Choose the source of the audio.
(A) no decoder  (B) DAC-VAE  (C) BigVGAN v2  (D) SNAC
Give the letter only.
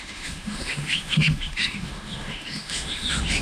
B